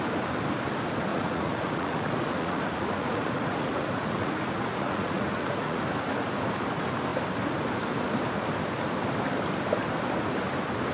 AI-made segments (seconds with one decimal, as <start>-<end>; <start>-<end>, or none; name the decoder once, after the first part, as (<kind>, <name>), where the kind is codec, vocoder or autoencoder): 1.1-5.8 (vocoder, Vocos)